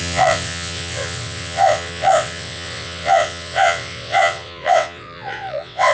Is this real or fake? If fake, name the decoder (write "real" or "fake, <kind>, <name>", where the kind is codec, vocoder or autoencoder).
fake, vocoder, WaveNeXt